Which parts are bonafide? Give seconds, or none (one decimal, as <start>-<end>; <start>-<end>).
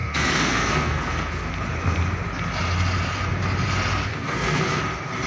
1.5-4.1; 4.8-5.3